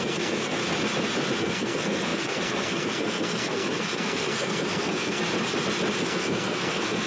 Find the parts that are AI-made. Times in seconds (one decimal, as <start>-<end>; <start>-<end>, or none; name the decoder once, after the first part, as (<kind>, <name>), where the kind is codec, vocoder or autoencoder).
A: 0.0-0.6 (codec, SNAC); 1.4-5.2; 6.0-7.1